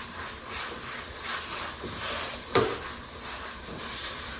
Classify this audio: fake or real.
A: real